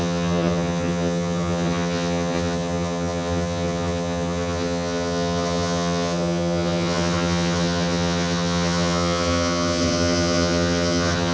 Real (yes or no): no